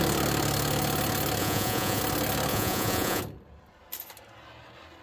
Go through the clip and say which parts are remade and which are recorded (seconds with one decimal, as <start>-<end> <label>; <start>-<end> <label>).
0.0-1.4 recorded; 1.4-2.0 remade; 2.0-2.5 recorded; 2.5-3.2 remade; 3.2-5.0 recorded